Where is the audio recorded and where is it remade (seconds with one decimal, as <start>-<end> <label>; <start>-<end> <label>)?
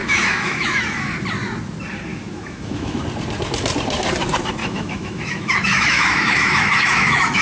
0.0-1.1 remade; 1.1-2.1 recorded; 2.1-3.0 remade; 3.0-4.6 recorded; 4.6-7.4 remade